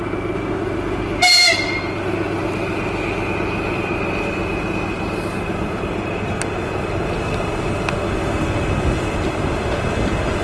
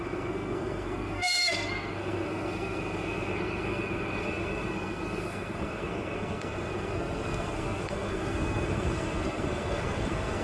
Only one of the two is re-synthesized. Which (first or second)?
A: second